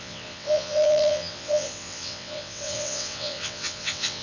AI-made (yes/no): yes